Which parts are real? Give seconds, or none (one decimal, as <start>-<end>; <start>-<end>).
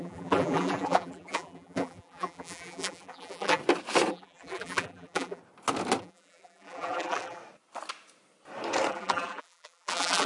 3.6-4.1; 5.4-6.0; 7.4-8.9